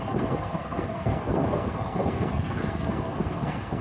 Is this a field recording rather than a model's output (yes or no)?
no